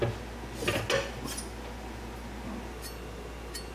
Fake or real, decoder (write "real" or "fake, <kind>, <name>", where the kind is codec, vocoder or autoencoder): real